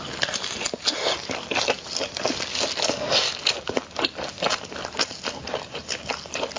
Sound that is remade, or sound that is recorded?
recorded